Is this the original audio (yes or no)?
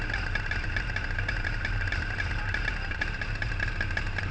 no